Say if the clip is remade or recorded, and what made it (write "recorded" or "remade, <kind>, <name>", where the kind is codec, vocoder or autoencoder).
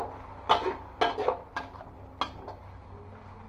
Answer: recorded